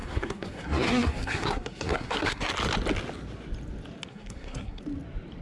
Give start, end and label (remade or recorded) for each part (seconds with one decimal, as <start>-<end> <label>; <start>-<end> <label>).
0.0-2.5 remade; 2.5-4.1 recorded; 4.1-4.8 remade; 4.8-5.4 recorded